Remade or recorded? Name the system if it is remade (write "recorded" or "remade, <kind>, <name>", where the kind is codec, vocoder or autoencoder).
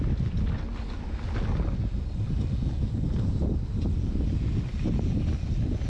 recorded